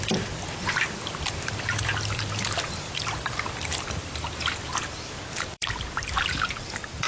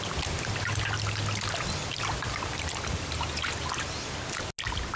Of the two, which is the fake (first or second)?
first